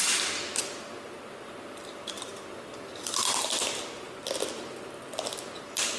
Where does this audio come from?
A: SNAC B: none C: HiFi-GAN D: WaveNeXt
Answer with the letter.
B